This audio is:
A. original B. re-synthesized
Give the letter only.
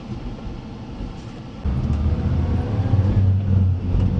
A